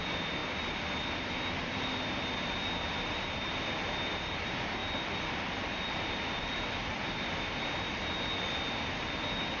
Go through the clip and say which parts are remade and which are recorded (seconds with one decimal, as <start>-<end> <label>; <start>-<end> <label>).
0.0-4.8 remade; 4.8-5.4 recorded; 5.4-9.6 remade